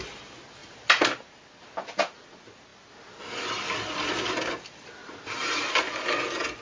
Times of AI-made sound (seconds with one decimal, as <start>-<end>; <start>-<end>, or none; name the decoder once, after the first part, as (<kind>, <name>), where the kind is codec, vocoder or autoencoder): 0.6-1.4 (vocoder, BigVGAN v2); 5.0-5.7